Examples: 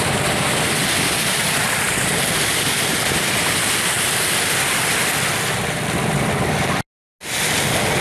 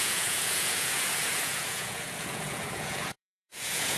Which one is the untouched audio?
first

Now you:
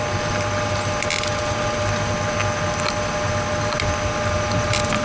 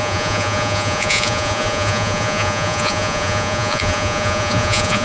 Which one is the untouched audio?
first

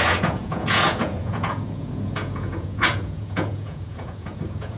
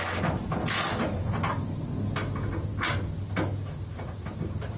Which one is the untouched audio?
second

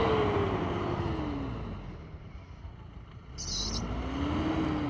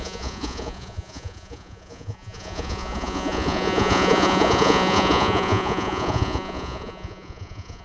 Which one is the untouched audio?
first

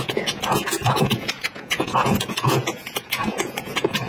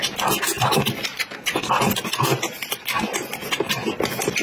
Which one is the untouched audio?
second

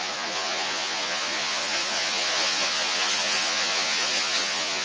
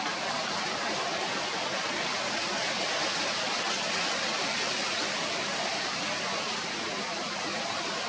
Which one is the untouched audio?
second